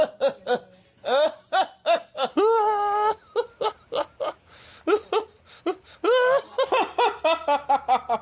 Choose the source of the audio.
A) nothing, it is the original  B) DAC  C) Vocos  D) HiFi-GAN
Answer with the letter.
A